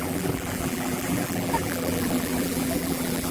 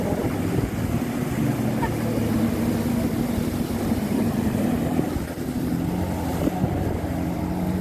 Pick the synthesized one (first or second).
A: first